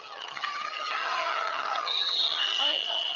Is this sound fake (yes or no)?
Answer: yes